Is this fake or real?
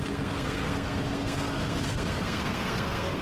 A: fake